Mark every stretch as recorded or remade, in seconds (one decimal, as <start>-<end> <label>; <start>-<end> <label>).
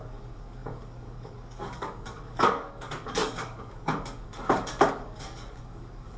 0.0-6.2 remade